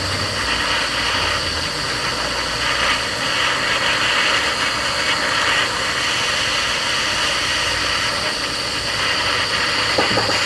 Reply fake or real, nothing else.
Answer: real